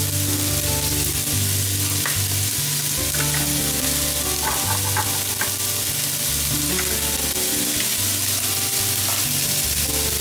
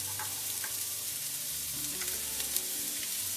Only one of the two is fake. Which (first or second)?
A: second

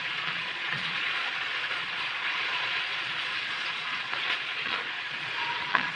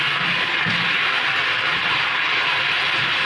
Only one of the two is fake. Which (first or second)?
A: first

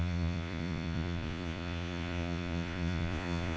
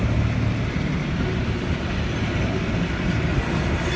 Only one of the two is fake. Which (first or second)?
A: first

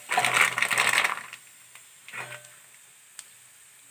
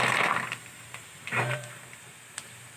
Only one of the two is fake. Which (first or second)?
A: second